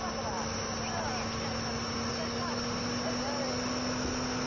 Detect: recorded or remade recorded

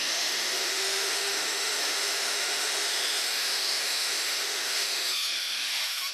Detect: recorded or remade remade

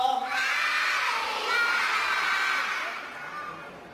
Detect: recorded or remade recorded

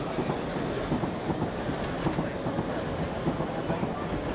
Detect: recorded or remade recorded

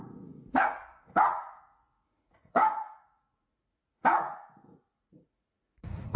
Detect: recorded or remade remade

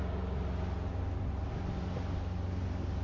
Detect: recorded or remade recorded